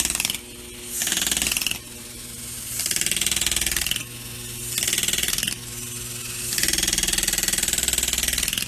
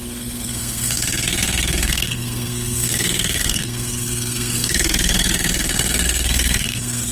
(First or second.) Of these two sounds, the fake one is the second